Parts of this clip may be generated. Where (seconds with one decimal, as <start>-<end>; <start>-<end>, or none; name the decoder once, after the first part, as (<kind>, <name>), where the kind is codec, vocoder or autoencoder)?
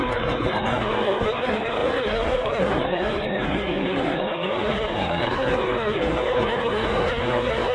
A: 0.0-7.7 (codec, SNAC)